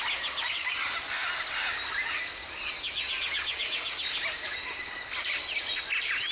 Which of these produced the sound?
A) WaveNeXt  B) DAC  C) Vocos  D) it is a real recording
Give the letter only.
D